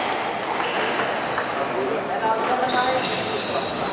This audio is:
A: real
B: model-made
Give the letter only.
A